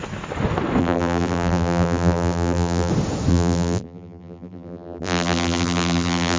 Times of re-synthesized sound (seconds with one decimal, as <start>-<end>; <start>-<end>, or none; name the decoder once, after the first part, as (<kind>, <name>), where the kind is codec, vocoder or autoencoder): 0.8-2.9 (vocoder, BigVGAN v2); 3.3-6.4